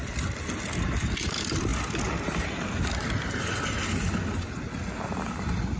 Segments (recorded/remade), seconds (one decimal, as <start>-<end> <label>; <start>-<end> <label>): 0.0-5.8 recorded